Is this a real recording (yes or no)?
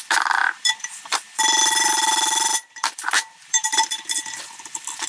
no